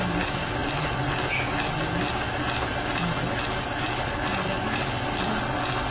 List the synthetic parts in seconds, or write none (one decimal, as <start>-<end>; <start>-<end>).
none